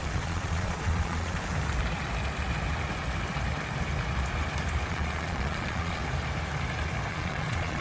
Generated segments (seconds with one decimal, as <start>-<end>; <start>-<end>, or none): 0.0-1.4; 4.9-6.0; 7.1-7.8